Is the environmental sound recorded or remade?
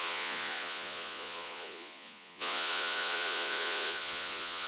remade